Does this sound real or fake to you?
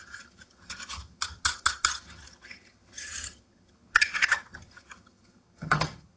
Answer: fake